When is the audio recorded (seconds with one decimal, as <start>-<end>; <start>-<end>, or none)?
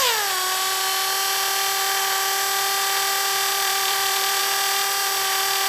0.0-3.5; 4.4-5.7